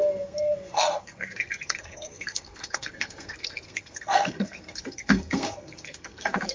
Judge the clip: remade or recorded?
remade